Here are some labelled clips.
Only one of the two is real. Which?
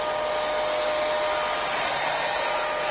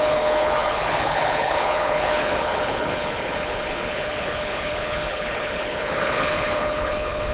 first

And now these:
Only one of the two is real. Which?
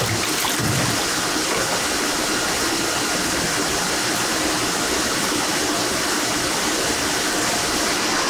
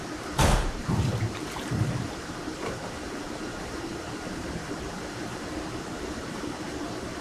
first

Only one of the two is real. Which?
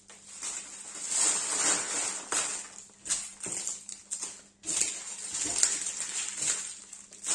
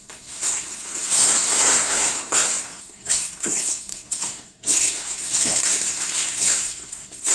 first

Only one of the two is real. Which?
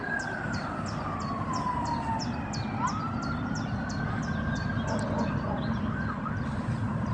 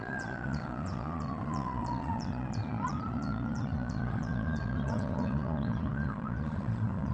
first